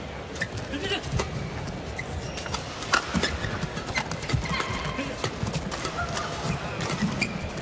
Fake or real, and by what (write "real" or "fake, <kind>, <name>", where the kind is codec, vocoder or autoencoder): real